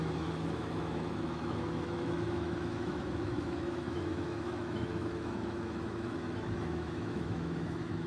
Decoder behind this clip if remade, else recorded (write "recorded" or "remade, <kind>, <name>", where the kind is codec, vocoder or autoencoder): remade, autoencoder, DAC-VAE